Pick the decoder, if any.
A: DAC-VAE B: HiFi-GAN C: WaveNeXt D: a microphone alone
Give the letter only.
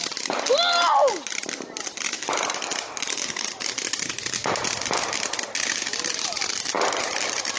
D